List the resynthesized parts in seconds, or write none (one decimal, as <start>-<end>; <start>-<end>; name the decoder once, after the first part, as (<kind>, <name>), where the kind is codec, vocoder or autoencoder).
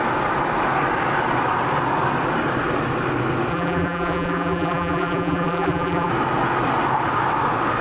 3.5-6.1 (vocoder, BigVGAN v2)